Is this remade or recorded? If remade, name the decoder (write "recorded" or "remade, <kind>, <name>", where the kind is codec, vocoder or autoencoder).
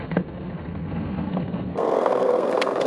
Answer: remade, codec, SNAC